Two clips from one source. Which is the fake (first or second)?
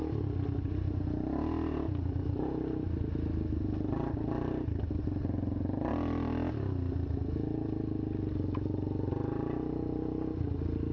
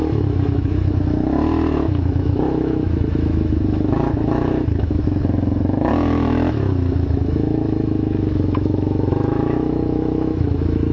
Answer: second